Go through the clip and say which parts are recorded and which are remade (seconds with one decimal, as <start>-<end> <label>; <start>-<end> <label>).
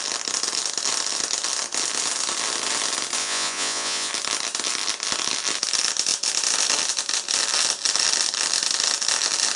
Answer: 0.0-3.2 recorded; 3.2-4.1 remade; 4.1-9.6 recorded